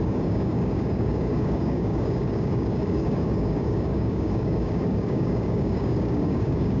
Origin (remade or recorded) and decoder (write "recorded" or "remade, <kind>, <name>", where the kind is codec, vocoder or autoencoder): remade, codec, DAC